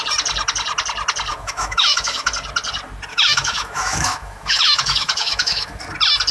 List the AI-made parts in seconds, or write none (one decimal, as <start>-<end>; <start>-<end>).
1.3-2.3; 3.1-5.8